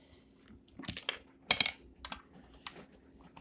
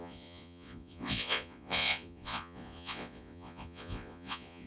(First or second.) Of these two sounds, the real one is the first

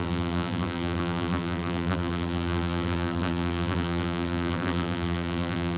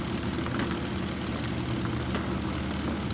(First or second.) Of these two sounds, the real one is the second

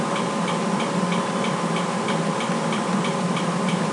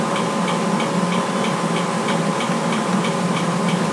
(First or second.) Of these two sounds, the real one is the second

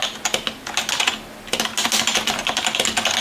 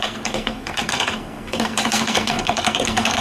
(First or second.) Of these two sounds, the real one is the first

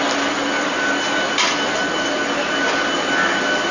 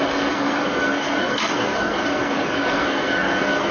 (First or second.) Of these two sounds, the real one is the first